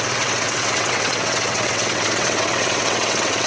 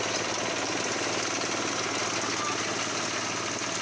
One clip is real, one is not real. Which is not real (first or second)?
first